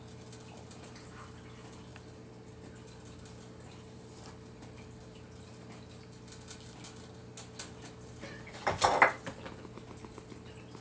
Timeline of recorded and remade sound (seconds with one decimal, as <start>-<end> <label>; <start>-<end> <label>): 0.0-10.8 recorded

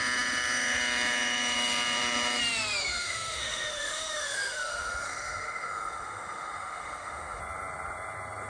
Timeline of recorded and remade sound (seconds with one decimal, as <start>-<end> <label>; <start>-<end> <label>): 0.0-2.8 recorded; 2.8-7.4 remade; 7.4-8.5 recorded

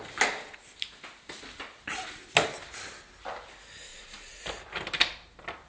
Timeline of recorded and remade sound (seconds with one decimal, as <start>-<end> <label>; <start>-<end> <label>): 0.0-3.9 recorded; 3.9-4.4 remade; 4.4-5.7 recorded

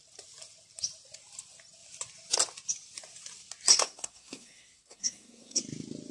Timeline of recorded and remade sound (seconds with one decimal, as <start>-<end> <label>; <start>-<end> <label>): 0.0-3.7 recorded; 3.7-5.6 remade; 5.6-6.1 recorded